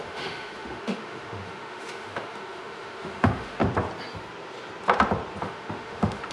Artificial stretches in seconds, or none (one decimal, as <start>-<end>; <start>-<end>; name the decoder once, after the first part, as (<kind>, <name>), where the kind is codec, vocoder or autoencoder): 0.0-3.6 (autoencoder, DAC-VAE); 5.4-6.3